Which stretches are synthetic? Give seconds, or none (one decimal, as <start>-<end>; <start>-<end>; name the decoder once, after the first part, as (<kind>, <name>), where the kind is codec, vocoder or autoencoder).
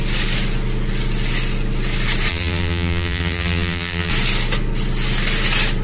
2.3-4.1 (vocoder, BigVGAN v2)